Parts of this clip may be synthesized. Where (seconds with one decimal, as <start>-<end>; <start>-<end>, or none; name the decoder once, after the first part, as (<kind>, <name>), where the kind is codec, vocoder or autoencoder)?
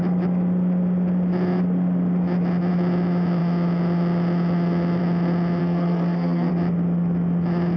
5.6-6.5 (codec, SNAC)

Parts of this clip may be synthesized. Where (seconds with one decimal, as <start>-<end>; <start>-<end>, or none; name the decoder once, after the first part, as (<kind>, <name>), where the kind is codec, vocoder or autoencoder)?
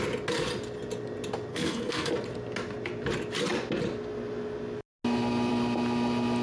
1.5-2.1 (codec, SNAC)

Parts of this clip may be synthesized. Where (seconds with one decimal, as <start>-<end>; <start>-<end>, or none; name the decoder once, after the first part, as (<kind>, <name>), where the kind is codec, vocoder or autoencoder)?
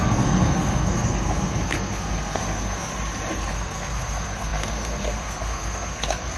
0.0-2.9 (codec, SNAC); 3.5-6.4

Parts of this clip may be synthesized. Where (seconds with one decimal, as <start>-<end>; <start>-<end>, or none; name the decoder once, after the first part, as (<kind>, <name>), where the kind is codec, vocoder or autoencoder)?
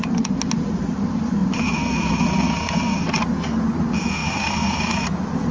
none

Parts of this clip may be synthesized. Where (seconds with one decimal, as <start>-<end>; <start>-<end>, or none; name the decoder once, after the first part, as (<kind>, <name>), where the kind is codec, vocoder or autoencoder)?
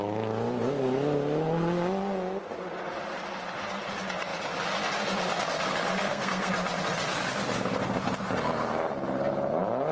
5.9-6.5 (codec, SNAC)